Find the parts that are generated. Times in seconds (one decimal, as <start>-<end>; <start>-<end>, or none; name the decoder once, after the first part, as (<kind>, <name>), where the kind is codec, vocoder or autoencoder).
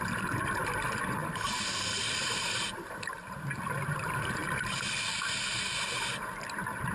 1.2-3.6 (vocoder, BigVGAN v2)